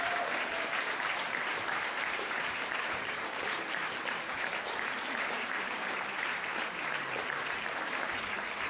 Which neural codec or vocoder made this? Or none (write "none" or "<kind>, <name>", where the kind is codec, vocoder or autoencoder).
vocoder, BigVGAN v2